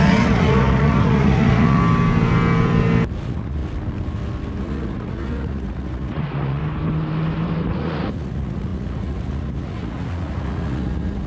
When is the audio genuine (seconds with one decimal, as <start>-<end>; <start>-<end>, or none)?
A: 1.8-3.2; 3.6-4.6; 6.6-7.7